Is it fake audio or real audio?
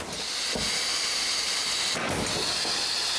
real